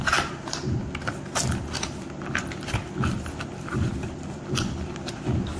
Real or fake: real